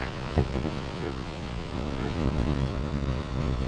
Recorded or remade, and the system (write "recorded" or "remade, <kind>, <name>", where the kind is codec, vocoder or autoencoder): remade, vocoder, Vocos